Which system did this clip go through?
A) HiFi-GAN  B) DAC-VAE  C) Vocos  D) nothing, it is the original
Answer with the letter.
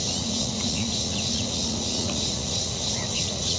C